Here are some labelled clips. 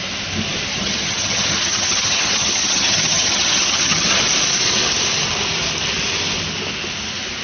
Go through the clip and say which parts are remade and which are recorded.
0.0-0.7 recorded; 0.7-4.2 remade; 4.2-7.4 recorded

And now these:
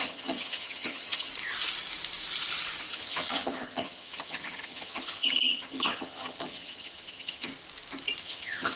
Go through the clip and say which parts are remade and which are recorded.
0.0-1.3 remade; 1.3-2.9 recorded; 2.9-7.5 remade; 7.5-8.2 recorded; 8.2-8.8 remade

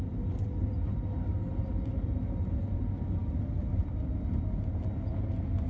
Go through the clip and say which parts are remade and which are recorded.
0.0-5.7 recorded

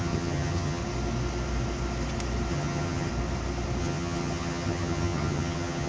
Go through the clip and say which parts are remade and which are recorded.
0.0-0.8 remade; 0.8-2.5 recorded; 2.5-3.1 remade; 3.1-3.8 recorded; 3.8-5.9 remade

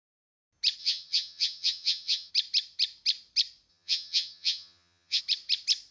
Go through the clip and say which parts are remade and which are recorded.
0.0-0.8 recorded; 0.8-2.3 remade; 2.3-3.7 recorded; 3.7-5.2 remade; 5.2-5.9 recorded

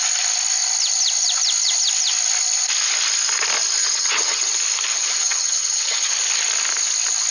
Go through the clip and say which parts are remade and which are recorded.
0.0-3.8 recorded; 3.8-4.5 remade; 4.5-4.9 recorded; 4.9-6.1 remade; 6.1-7.3 recorded